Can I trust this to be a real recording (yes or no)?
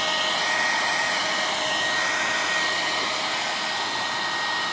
yes